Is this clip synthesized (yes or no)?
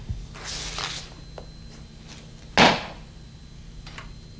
no